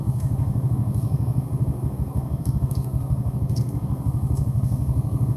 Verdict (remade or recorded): remade